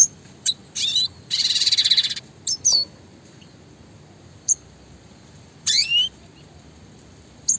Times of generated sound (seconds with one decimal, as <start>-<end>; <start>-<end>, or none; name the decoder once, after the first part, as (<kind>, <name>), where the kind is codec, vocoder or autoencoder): 0.0-0.6 (vocoder, BigVGAN v2); 1.2-1.8; 4.2-5.9; 6.5-7.6